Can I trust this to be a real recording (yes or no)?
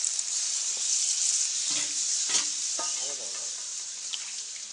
yes